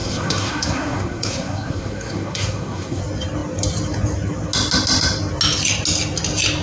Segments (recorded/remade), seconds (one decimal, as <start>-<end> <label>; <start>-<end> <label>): 0.0-3.0 remade; 3.0-6.6 recorded